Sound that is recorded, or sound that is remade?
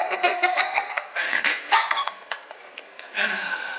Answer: remade